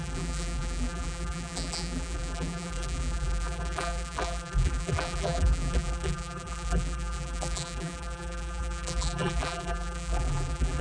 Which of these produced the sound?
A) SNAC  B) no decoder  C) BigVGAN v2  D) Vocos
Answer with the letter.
C